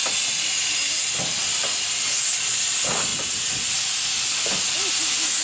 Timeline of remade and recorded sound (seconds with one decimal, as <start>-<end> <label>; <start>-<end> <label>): 0.0-5.4 recorded